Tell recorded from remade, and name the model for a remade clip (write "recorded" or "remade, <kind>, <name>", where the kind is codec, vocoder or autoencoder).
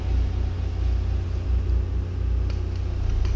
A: recorded